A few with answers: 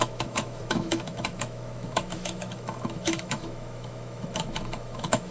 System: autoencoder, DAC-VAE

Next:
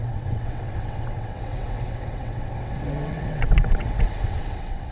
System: vocoder, WaveNeXt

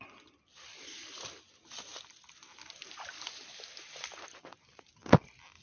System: none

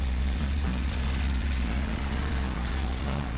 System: vocoder, Vocos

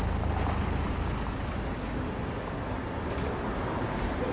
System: none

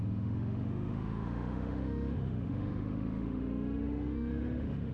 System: autoencoder, DAC-VAE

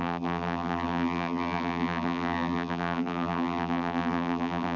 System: vocoder, BigVGAN v2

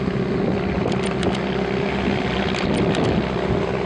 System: none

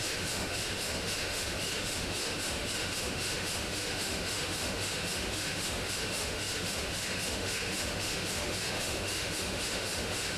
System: autoencoder, DAC-VAE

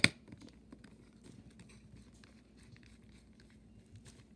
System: none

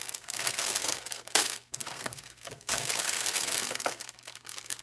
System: codec, SNAC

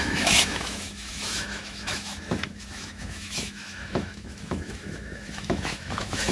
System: autoencoder, DAC-VAE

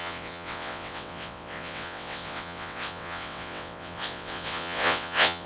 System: vocoder, WaveNeXt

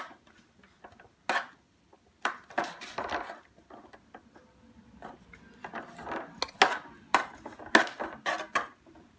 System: none